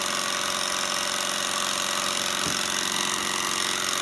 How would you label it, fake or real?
real